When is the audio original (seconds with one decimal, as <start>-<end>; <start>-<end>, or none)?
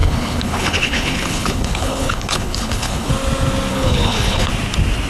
3.1-3.7; 4.5-5.1